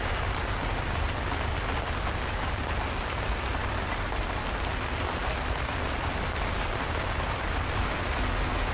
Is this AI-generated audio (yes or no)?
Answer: no